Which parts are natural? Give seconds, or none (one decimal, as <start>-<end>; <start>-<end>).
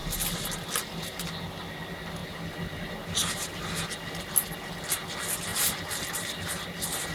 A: 0.0-7.1